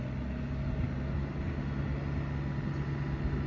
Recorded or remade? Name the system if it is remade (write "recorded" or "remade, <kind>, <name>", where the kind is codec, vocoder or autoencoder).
recorded